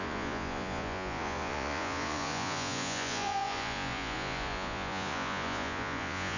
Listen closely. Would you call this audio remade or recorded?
remade